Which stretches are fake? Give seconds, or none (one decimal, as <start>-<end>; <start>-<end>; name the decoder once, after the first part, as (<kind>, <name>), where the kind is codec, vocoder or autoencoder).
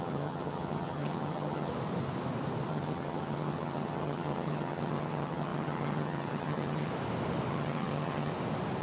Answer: 0.0-1.7 (vocoder, HiFi-GAN); 2.7-6.9; 7.5-8.3